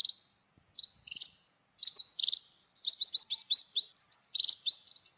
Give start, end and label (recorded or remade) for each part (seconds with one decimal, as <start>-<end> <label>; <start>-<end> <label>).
0.0-5.2 recorded